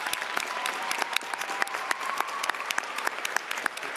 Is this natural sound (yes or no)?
no